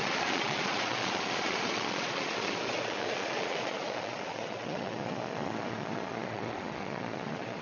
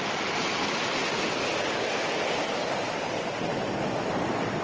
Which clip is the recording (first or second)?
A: second